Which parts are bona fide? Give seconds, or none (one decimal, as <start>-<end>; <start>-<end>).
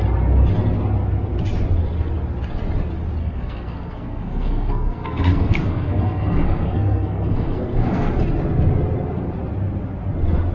0.0-3.2; 8.1-10.5